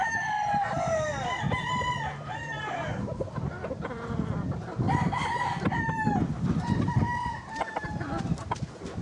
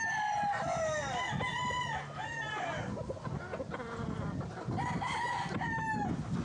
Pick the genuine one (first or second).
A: second